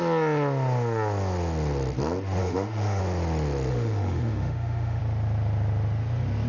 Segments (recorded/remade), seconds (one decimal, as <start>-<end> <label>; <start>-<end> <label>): 0.0-2.4 recorded; 2.4-3.0 remade; 3.0-3.7 recorded; 3.7-5.0 remade; 5.0-6.5 recorded